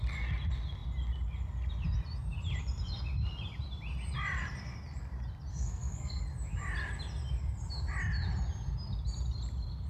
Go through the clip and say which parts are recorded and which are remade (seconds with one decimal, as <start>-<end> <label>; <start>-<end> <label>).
0.0-5.5 recorded; 5.5-6.2 remade; 6.2-9.9 recorded